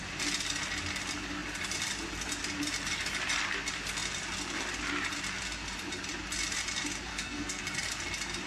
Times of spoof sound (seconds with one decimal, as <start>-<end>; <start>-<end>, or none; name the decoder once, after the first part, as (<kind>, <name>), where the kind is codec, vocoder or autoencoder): 7.1-7.6 (codec, SNAC)